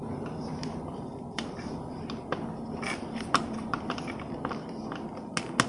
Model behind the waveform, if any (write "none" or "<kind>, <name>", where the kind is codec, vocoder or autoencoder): none